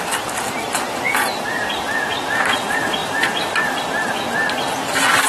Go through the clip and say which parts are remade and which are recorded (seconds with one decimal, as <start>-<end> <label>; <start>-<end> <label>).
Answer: 0.0-3.0 recorded; 3.0-3.8 remade; 3.8-5.3 recorded